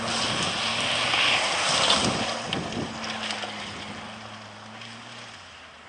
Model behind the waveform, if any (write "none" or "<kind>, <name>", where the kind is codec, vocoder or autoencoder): none